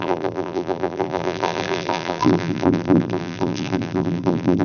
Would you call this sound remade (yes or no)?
yes